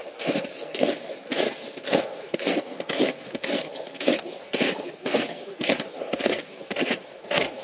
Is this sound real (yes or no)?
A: no